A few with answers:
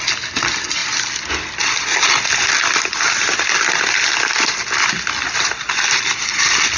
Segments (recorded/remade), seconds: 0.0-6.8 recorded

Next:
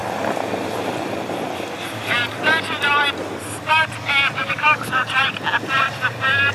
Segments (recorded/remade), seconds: 0.0-4.4 recorded; 4.4-5.1 remade; 5.1-6.5 recorded

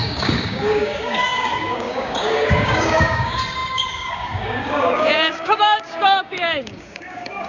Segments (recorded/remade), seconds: 0.0-7.5 remade

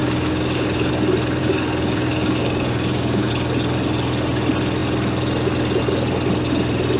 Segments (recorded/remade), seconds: 0.0-0.9 remade; 0.9-1.4 recorded; 1.4-3.3 remade; 3.3-7.0 recorded

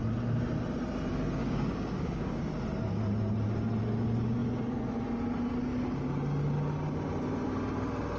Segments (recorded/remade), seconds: 0.0-1.4 recorded; 1.4-2.4 remade; 2.4-8.2 recorded